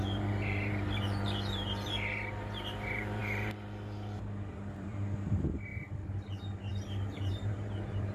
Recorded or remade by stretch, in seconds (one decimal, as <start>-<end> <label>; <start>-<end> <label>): 0.0-5.7 remade; 5.7-6.3 recorded; 6.3-6.7 remade; 6.7-7.3 recorded; 7.3-8.1 remade